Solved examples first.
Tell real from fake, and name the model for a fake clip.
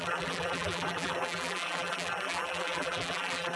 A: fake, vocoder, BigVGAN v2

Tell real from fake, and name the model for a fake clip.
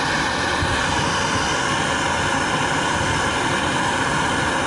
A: real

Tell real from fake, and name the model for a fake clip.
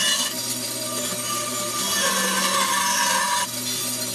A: real